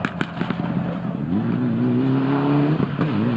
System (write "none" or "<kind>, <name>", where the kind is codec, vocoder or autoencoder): none